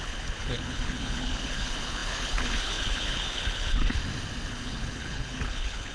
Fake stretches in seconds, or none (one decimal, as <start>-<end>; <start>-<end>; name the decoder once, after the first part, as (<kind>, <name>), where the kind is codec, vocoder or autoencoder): 0.0-4.0 (codec, HILCodec); 4.5-5.9